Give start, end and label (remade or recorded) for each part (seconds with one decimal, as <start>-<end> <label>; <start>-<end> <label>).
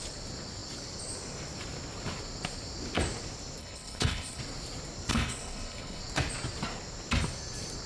0.0-3.6 recorded; 3.6-4.4 remade; 4.4-5.1 recorded; 5.1-6.0 remade; 6.0-7.9 recorded